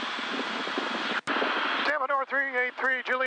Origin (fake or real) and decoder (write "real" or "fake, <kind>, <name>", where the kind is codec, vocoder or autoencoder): real